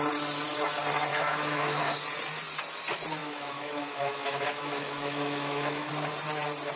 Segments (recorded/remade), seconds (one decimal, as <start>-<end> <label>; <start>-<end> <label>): 0.0-1.1 recorded; 1.1-1.9 remade; 1.9-3.2 recorded; 3.2-5.9 remade; 5.9-6.8 recorded